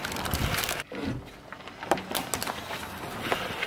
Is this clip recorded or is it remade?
recorded